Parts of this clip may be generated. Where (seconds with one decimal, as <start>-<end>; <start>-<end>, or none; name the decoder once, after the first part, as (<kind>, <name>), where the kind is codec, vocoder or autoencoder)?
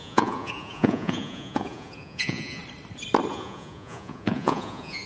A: 0.0-2.6 (vocoder, Vocos); 3.3-5.1